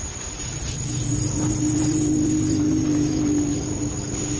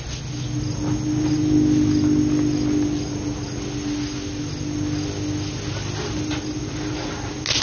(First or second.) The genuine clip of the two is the second